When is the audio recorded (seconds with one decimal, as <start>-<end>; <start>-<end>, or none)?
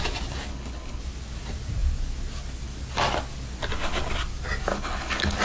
0.0-0.5; 1.0-4.7